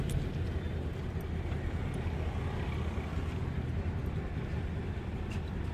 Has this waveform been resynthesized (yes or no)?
no